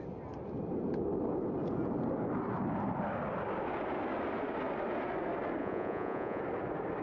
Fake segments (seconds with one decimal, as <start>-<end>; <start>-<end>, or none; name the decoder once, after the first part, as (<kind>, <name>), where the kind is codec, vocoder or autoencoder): 5.6-6.4 (vocoder, Vocos)